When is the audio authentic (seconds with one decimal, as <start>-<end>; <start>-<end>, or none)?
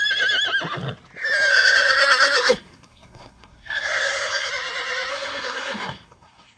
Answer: 0.0-1.5; 4.5-5.1